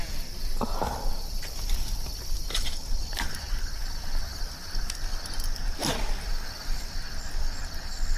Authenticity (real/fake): real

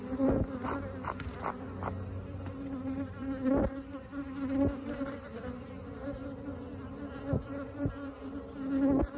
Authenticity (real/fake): real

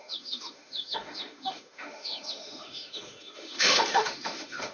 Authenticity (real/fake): fake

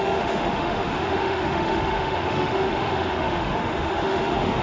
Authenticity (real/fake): fake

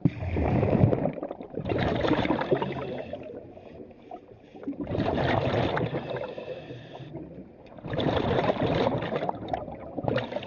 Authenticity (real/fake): fake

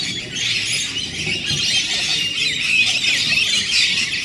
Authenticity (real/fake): real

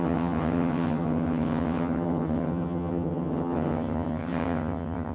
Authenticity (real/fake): fake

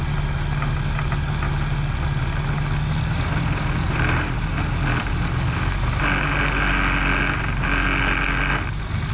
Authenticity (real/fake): real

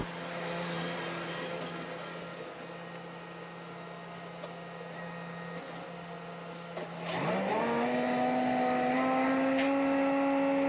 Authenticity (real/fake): real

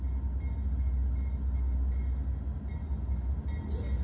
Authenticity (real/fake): real